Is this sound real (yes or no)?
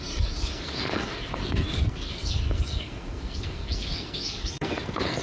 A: no